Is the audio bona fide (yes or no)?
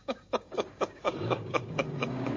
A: no